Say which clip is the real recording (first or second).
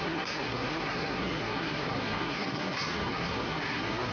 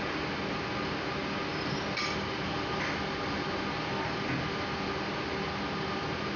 second